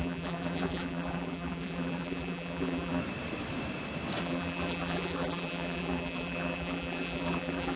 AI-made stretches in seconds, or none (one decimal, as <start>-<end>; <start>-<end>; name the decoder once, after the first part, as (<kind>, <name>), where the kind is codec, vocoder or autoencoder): 0.0-3.0 (vocoder, BigVGAN v2); 4.2-7.8